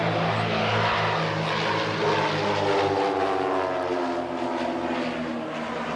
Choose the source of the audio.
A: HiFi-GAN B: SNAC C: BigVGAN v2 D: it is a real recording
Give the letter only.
D